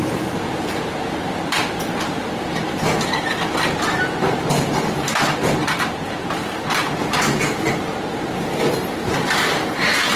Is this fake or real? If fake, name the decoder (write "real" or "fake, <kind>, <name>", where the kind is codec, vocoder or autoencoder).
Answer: fake, vocoder, BigVGAN v2